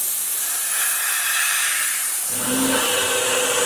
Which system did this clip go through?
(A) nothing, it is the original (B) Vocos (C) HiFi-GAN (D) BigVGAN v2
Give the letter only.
A